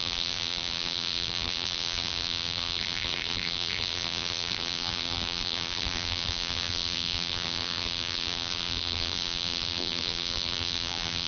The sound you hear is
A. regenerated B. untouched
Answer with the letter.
A